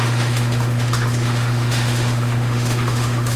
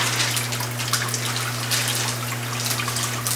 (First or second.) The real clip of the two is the second